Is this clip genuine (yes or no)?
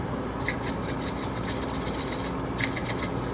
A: yes